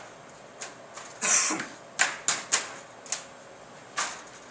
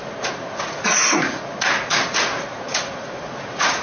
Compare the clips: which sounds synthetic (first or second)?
second